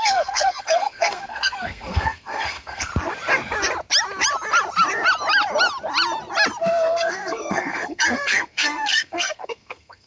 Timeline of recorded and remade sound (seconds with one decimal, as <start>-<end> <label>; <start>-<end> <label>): 0.0-2.9 remade; 2.9-6.6 recorded; 6.6-10.1 remade